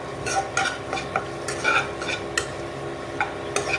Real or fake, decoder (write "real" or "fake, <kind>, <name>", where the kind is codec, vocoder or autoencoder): real